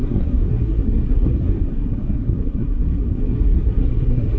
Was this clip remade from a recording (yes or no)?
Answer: yes